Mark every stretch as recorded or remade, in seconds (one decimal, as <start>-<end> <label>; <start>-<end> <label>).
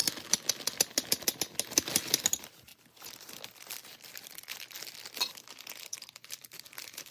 0.0-7.1 recorded